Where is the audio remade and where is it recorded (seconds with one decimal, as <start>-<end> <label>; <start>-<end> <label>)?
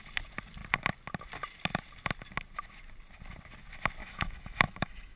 0.0-4.0 recorded; 4.0-5.2 remade